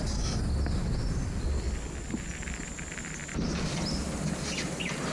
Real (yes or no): yes